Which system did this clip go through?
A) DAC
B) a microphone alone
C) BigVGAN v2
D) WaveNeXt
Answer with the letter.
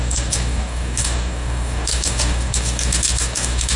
A